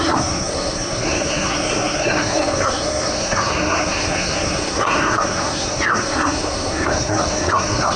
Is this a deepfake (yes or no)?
yes